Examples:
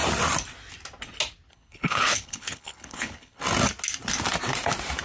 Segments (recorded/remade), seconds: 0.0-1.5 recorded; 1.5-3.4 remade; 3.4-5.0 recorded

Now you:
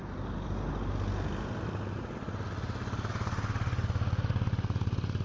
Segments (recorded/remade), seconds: 0.0-5.2 recorded